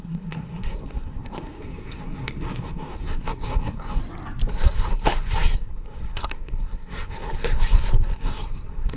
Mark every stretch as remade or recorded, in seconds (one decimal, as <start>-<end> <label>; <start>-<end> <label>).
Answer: 0.0-4.0 remade; 4.0-4.5 recorded; 4.5-9.0 remade